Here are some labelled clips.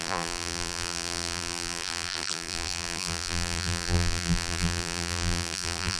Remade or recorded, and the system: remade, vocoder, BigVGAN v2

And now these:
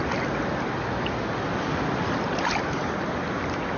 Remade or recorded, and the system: recorded